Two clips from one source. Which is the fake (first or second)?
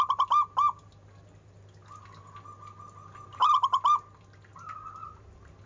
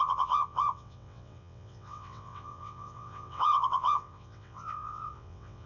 second